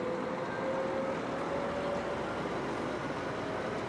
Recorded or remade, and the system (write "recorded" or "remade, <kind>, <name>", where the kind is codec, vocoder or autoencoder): recorded